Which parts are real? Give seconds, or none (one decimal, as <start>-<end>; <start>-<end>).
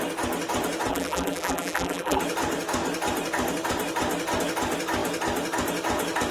0.0-0.9; 2.2-6.3